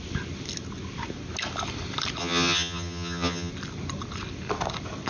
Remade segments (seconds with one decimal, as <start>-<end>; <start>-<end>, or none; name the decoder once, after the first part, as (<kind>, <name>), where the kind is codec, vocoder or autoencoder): 2.2-3.5 (vocoder, HiFi-GAN)